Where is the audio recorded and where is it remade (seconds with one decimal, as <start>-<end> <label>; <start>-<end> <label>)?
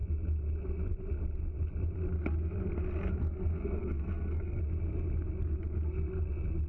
0.0-3.2 recorded; 3.2-4.6 remade; 4.6-6.7 recorded